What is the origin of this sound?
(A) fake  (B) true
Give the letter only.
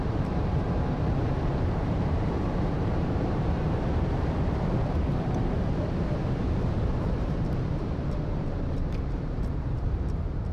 A